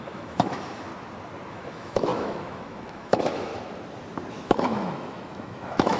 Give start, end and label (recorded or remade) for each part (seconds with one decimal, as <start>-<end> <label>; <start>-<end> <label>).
0.0-0.9 remade; 0.9-1.5 recorded; 1.5-3.5 remade; 3.5-4.3 recorded; 4.3-6.0 remade